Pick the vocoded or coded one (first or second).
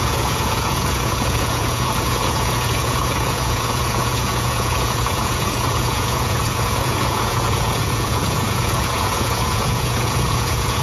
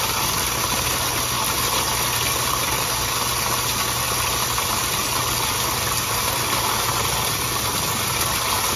first